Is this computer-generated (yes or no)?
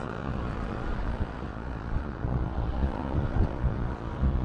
yes